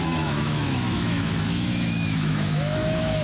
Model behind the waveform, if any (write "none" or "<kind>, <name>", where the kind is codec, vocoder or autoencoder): autoencoder, DAC-VAE